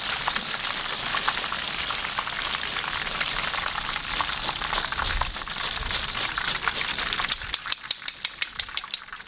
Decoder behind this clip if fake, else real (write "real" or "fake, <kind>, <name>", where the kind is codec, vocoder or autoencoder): fake, vocoder, BigVGAN v2